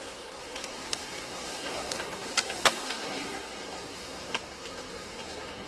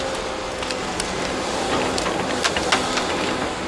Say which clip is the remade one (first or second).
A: first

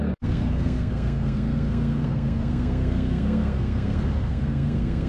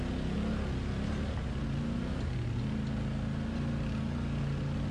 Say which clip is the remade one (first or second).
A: first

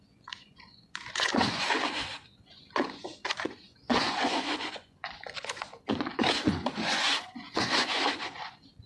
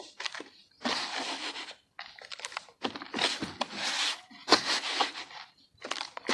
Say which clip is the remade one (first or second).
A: first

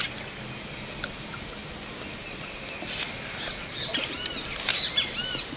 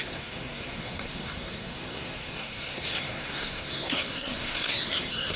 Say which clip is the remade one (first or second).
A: second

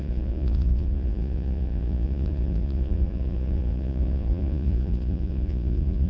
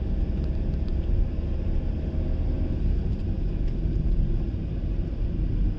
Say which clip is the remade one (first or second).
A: first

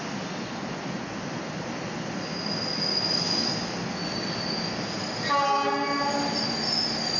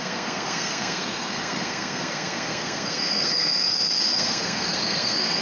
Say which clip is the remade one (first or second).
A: second